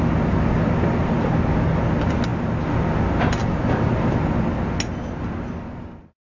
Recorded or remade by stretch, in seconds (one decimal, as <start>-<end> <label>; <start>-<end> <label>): 0.0-6.3 recorded